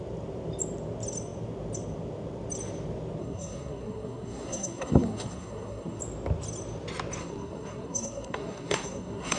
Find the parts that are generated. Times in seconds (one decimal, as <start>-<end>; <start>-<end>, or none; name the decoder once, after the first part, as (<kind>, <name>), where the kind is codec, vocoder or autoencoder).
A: 3.2-6.0 (codec, SNAC); 7.2-9.4